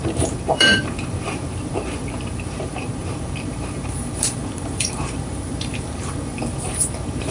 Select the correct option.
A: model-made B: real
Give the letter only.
A